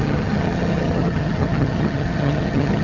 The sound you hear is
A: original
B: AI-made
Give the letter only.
B